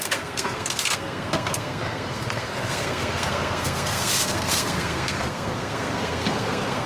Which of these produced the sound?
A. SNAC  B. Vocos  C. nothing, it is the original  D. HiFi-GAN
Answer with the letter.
A